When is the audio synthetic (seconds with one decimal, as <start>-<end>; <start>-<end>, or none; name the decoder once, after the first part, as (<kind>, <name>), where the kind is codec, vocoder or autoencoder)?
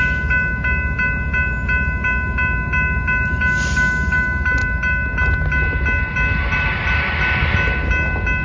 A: none